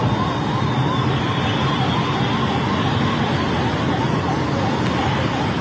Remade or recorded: recorded